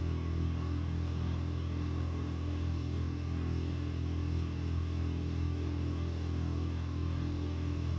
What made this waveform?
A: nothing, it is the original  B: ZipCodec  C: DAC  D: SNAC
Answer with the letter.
C